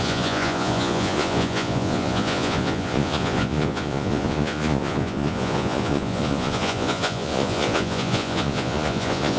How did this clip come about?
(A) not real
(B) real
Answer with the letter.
A